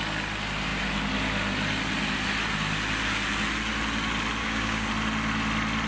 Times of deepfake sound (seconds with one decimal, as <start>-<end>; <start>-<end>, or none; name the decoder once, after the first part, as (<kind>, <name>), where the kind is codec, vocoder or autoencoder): 4.4-4.9 (codec, DAC)